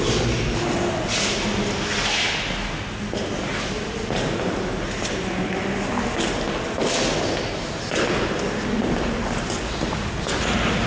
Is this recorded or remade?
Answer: recorded